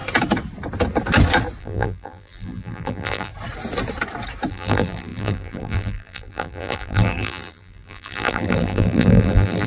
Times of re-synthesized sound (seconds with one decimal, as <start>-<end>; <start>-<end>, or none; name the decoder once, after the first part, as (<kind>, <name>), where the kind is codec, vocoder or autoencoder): 1.6-3.3 (vocoder, BigVGAN v2); 4.5-9.7